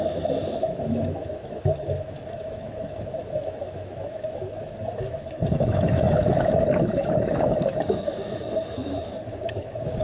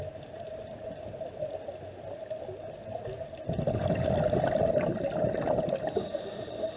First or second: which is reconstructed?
first